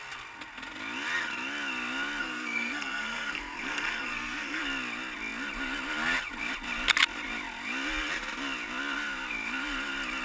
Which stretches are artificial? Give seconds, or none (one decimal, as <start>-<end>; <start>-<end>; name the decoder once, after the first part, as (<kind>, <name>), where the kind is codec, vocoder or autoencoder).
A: 2.2-4.6 (codec, SNAC)